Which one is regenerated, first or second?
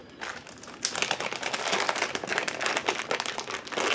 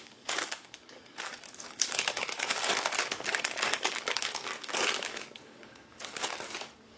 second